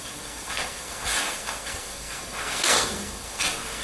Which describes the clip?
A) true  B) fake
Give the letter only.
B